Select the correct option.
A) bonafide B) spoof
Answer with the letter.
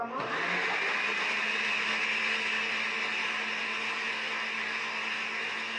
A